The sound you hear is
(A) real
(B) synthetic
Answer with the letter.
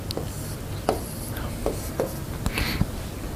A